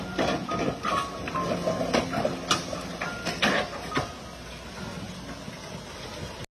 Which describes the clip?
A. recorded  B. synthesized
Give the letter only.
A